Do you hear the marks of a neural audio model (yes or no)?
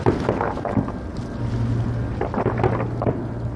no